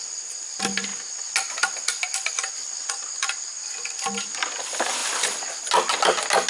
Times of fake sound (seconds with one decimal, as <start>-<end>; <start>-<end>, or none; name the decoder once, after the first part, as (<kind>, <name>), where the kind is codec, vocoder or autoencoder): none